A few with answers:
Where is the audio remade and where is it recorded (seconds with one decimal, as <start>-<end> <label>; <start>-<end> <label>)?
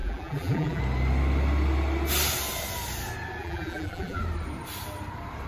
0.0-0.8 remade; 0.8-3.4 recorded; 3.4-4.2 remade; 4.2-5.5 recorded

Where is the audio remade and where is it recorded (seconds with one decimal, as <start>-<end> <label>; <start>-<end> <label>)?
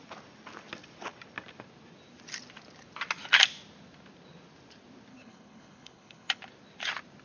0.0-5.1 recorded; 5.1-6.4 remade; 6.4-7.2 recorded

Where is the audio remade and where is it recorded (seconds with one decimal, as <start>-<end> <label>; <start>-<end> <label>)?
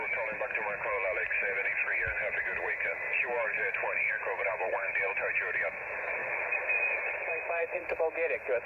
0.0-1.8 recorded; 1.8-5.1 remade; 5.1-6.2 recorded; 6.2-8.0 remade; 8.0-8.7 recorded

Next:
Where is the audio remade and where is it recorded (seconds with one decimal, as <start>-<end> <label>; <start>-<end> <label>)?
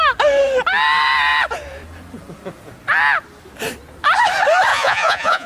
0.0-4.7 recorded; 4.7-5.5 remade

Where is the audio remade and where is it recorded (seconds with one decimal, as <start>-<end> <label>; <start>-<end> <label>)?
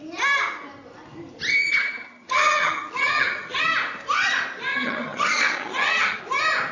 0.0-1.5 recorded; 1.5-3.6 remade; 3.6-4.7 recorded; 4.7-6.2 remade; 6.2-6.7 recorded